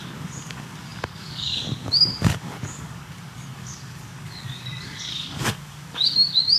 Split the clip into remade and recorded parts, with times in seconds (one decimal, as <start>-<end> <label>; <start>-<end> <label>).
0.0-6.6 remade